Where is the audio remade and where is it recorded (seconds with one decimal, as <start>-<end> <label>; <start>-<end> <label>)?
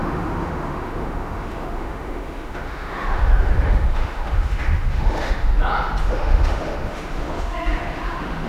0.0-5.5 remade; 5.5-6.0 recorded; 6.0-8.5 remade